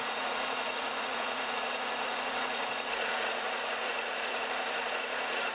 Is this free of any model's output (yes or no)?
no